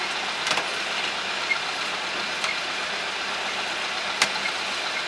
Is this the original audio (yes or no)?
yes